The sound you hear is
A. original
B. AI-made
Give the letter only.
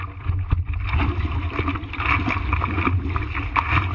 A